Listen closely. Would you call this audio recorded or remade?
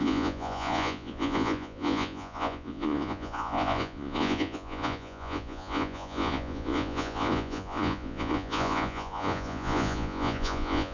remade